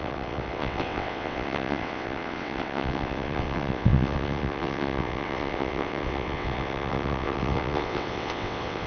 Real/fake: fake